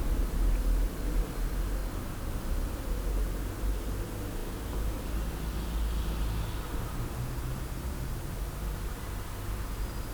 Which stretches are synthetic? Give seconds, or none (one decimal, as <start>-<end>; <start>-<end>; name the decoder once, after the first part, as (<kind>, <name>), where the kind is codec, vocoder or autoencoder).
1.8-2.3 (vocoder, BigVGAN v2)

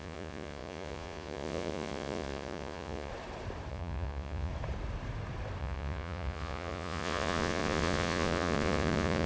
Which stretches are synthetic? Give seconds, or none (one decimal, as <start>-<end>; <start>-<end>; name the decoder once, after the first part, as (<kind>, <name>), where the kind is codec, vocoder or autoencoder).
0.0-3.1 (vocoder, Vocos); 3.7-4.5; 5.6-9.3

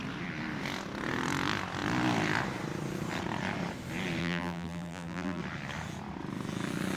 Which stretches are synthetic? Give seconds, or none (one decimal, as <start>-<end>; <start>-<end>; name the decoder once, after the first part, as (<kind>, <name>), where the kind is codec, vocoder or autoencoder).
4.2-5.4 (vocoder, BigVGAN v2)

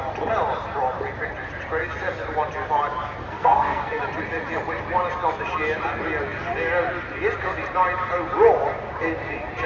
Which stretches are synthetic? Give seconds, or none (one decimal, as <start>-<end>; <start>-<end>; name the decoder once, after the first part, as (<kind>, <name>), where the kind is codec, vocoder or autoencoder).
3.2-4.0 (codec, SNAC)

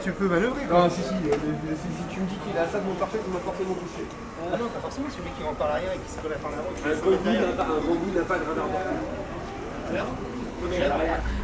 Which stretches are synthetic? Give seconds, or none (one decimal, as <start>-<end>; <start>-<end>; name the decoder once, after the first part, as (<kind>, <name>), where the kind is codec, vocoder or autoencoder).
9.8-11.4 (codec, HILCodec)

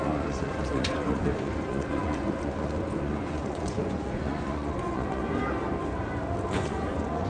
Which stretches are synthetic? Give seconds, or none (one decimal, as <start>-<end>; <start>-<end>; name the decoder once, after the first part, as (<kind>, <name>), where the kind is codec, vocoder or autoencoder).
0.0-5.2 (vocoder, Vocos); 6.5-7.3

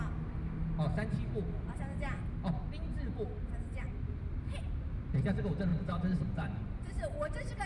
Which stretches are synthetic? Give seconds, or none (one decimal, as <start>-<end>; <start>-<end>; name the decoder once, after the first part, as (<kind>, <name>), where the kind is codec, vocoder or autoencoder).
5.7-7.0 (vocoder, Vocos)